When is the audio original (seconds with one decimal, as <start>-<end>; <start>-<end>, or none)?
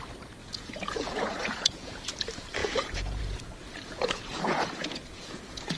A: 0.0-0.4; 2.1-2.6; 3.2-3.6